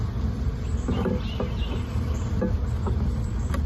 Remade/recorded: recorded